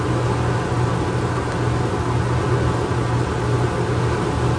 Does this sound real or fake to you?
real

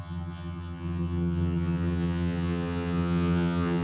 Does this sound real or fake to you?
fake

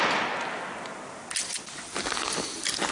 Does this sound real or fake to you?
real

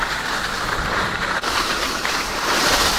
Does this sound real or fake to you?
fake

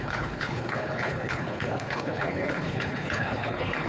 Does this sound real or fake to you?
fake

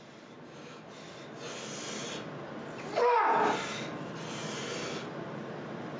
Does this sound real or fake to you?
real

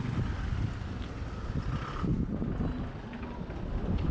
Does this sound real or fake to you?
real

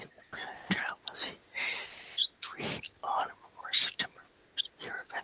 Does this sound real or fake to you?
real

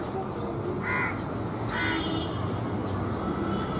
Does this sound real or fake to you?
real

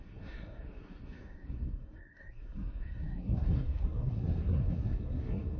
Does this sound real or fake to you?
fake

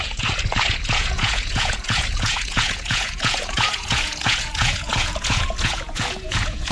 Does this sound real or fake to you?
fake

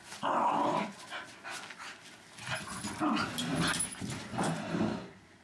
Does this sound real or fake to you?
real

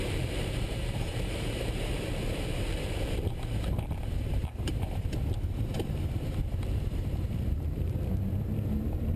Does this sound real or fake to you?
fake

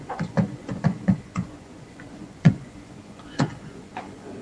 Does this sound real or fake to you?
fake